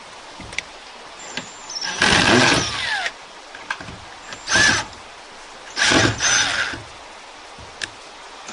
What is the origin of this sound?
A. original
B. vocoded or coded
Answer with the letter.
A